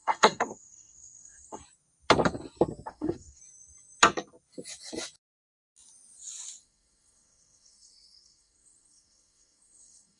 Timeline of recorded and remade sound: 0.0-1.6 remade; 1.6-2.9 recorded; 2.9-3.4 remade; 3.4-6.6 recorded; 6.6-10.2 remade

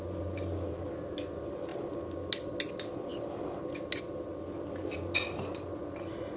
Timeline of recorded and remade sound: 0.0-6.4 recorded

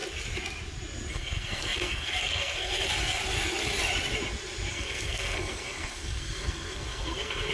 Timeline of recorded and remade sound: 0.0-1.1 recorded; 1.1-3.2 remade; 3.2-4.7 recorded; 4.7-7.5 remade

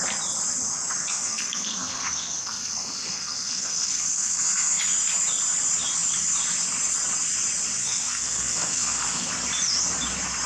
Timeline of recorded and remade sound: 0.0-1.0 recorded; 1.0-4.8 remade; 4.8-7.8 recorded; 7.8-9.3 remade; 9.3-10.5 recorded

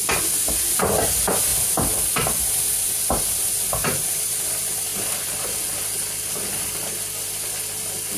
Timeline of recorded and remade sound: 0.0-8.2 recorded

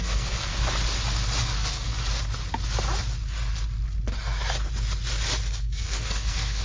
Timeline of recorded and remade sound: 0.0-0.5 remade; 0.5-1.4 recorded; 1.4-1.9 remade; 1.9-5.6 recorded; 5.6-6.6 remade